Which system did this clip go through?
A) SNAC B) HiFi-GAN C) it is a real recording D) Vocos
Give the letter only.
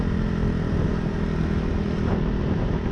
C